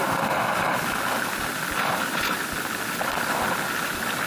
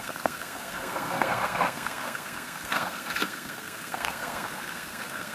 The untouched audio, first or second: first